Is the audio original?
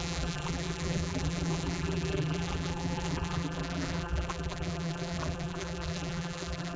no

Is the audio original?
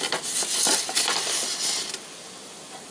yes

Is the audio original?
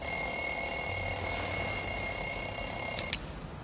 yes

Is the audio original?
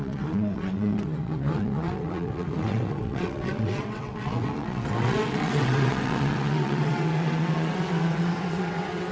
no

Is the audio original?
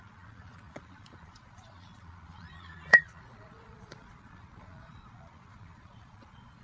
no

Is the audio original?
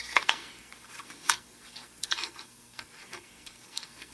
no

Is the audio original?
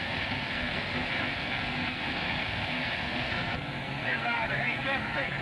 no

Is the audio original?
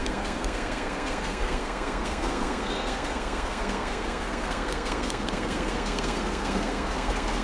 no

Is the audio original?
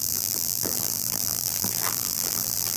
no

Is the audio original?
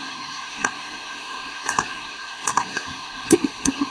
no